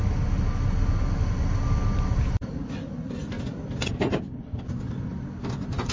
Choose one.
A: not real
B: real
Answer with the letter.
B